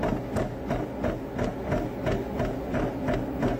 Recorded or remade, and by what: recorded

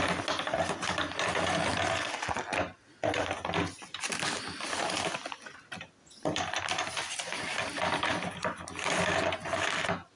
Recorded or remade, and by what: recorded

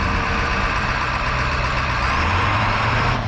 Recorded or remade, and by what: remade, vocoder, BigVGAN v2